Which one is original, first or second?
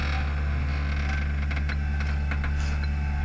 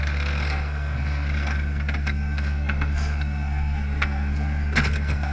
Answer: first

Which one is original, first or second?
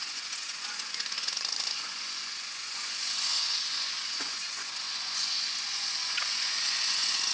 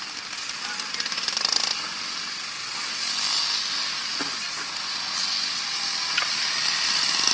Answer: second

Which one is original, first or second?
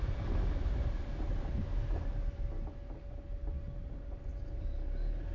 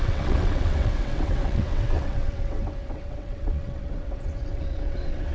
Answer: first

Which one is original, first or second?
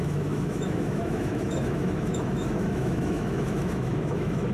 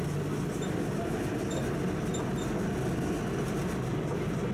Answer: second